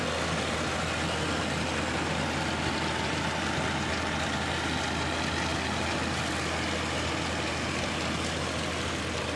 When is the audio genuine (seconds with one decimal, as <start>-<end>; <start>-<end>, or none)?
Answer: 0.0-9.4